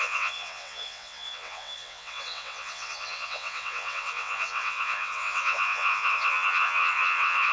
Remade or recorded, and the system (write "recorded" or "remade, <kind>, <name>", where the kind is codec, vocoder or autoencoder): remade, vocoder, WaveNeXt